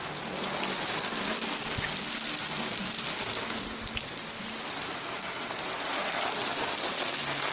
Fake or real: real